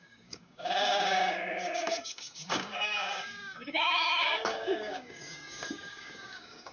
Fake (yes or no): yes